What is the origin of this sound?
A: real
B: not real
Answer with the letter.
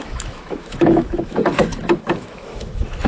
B